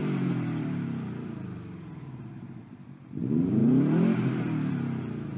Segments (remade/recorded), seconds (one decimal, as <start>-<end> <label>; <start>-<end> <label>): 0.0-5.4 remade